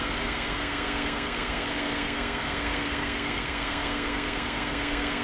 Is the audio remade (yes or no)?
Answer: yes